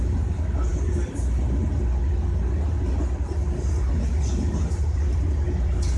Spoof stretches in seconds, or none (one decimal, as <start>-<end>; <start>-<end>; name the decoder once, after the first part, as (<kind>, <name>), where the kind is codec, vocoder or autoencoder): none